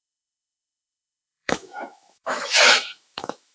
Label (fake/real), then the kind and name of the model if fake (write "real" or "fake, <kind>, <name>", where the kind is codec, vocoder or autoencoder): fake, autoencoder, DAC-VAE